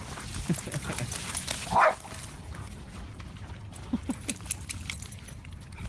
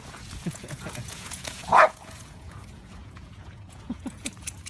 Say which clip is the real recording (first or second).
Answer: first